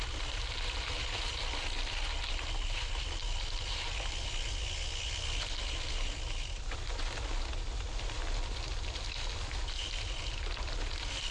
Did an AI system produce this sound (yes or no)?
no